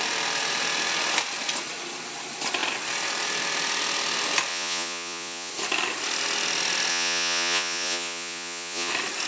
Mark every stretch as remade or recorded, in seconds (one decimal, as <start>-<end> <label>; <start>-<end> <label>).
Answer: 0.0-4.5 recorded; 4.5-5.5 remade; 5.5-6.9 recorded; 6.9-8.9 remade; 8.9-9.3 recorded